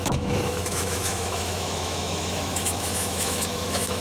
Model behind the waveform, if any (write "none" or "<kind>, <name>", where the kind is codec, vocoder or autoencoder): autoencoder, DAC-VAE